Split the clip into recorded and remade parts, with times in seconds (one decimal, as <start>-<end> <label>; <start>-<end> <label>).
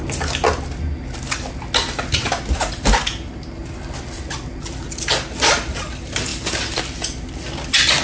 0.0-8.0 recorded